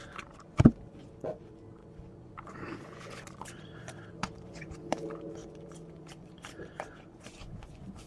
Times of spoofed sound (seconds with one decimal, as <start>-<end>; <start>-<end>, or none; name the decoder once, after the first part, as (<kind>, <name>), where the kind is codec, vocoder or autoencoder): 0.0-8.1 (vocoder, Vocos)